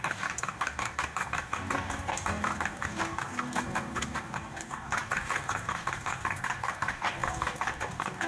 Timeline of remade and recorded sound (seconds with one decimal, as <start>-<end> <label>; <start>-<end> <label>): 0.0-8.3 remade